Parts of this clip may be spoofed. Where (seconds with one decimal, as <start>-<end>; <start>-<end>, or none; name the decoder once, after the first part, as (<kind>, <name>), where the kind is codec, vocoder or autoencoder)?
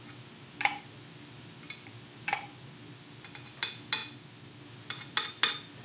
none